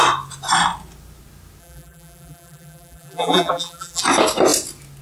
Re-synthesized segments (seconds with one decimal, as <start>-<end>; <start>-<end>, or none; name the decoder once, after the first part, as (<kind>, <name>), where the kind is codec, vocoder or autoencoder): 1.6-4.0 (vocoder, BigVGAN v2)